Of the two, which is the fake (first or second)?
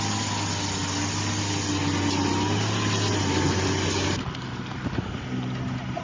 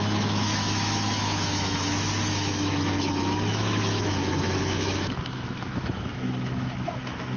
second